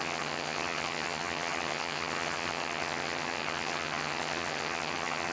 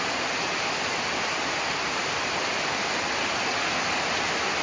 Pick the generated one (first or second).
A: first